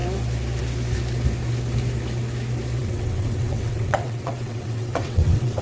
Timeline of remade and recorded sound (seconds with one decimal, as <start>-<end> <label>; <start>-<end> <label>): 0.0-2.8 recorded; 2.8-5.6 remade